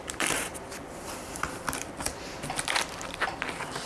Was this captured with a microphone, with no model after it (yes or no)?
no